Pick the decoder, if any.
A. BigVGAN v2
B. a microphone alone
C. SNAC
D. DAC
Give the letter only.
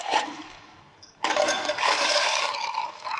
D